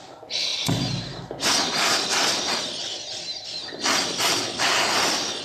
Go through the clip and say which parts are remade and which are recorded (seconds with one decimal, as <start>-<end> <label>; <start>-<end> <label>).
0.0-5.4 recorded